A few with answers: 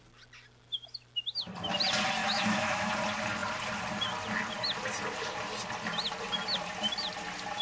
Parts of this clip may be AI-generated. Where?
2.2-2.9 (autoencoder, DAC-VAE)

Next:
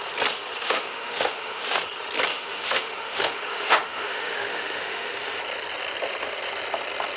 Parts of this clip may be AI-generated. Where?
0.6-1.8 (autoencoder, DAC-VAE); 2.3-5.4

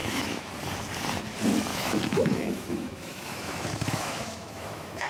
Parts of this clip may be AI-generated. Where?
0.0-0.5 (autoencoder, DAC-VAE); 1.7-5.1

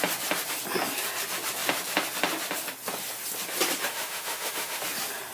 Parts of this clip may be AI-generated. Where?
3.9-4.8 (autoencoder, DAC-VAE)

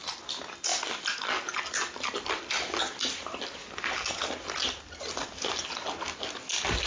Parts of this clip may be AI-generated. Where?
none

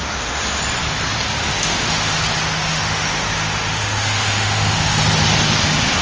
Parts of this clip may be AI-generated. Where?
0.0-0.6 (autoencoder, DAC-VAE); 1.4-2.2; 2.7-5.0

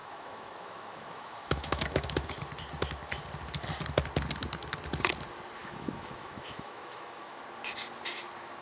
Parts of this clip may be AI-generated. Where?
0.0-2.3 (autoencoder, DAC-VAE); 5.6-7.4

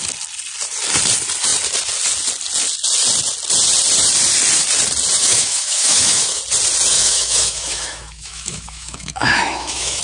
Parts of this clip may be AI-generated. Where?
5.2-6.4 (autoencoder, DAC-VAE); 6.9-10.0